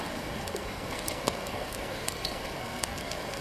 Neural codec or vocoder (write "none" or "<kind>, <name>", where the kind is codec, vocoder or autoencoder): codec, SNAC